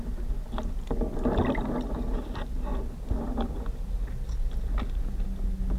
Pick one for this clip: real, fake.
real